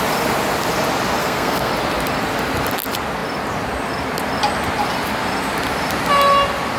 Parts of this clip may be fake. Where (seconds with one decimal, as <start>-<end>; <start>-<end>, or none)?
1.2-1.7